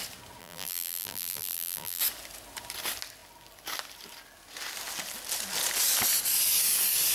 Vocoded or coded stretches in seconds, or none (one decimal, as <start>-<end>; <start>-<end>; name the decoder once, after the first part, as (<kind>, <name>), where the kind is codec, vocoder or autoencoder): 0.4-2.0 (vocoder, BigVGAN v2)